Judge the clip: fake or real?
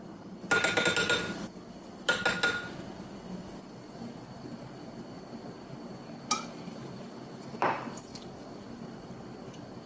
real